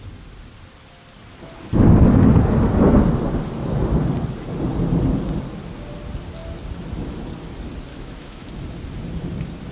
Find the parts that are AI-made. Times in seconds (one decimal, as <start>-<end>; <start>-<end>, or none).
7.9-8.5